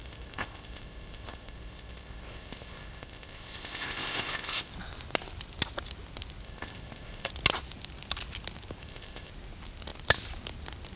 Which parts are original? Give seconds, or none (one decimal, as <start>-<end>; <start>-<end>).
4.7-6.4; 7.3-8.8; 9.3-11.0